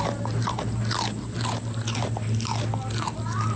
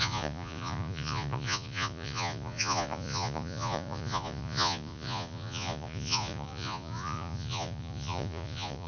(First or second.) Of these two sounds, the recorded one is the first